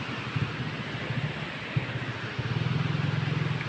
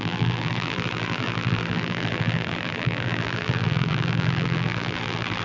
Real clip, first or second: first